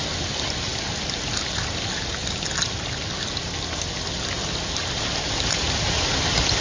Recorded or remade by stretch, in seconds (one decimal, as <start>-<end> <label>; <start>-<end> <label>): 0.0-6.6 recorded